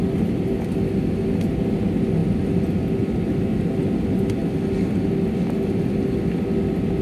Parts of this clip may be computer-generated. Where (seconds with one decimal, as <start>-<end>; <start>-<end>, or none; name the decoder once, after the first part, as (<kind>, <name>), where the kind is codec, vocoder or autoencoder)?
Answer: none

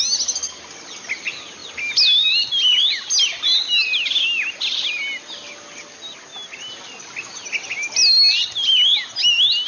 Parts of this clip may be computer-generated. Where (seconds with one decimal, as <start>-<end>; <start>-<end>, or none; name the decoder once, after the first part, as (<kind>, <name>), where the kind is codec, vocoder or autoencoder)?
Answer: none

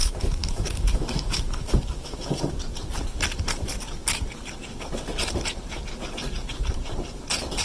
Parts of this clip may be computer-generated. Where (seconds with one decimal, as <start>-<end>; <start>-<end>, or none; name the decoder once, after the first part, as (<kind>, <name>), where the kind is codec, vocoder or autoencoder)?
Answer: 0.0-2.5 (autoencoder, DAC-VAE)

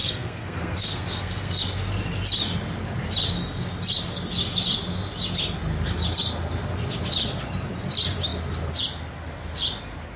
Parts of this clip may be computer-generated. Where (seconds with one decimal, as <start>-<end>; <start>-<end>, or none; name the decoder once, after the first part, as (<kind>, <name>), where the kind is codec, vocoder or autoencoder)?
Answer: 0.0-1.6 (codec, SNAC)